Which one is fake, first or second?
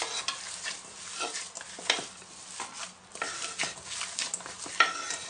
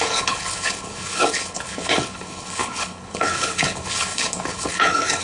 second